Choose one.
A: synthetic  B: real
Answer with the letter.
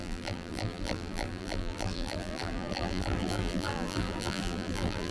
A